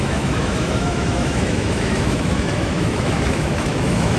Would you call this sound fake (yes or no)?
yes